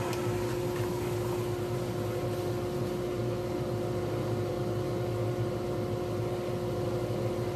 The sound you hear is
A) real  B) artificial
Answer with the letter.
A